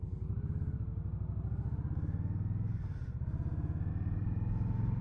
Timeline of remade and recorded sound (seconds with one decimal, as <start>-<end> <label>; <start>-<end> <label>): 0.0-5.0 recorded